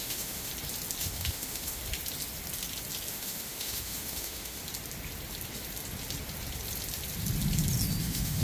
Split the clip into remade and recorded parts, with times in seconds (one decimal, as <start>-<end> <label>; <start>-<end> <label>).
0.0-0.5 remade; 0.5-1.0 recorded; 1.0-1.8 remade; 1.8-3.1 recorded; 3.1-4.6 remade; 4.6-8.0 recorded; 8.0-8.4 remade